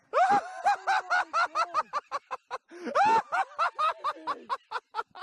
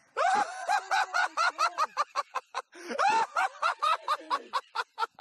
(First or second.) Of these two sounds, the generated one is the second